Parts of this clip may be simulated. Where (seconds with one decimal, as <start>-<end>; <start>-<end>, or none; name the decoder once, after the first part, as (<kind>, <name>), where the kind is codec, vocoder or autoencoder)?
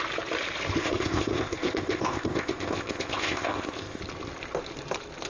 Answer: 0.8-4.0 (codec, ZipCodec)